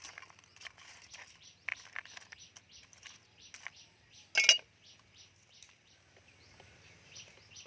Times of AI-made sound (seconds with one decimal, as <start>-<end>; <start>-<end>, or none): none